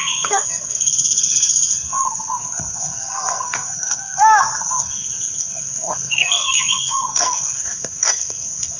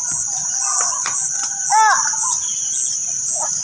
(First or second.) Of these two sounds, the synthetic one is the first